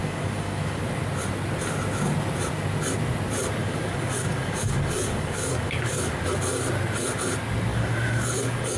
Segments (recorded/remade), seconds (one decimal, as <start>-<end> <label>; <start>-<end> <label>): 0.0-0.8 remade; 0.8-3.6 recorded; 3.6-6.2 remade; 6.2-7.7 recorded; 7.7-8.8 remade